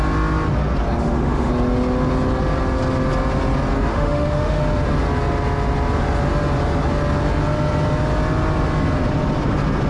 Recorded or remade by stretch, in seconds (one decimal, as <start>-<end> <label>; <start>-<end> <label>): 0.0-1.0 recorded; 1.0-1.5 remade; 1.5-3.9 recorded; 3.9-4.6 remade; 4.6-9.9 recorded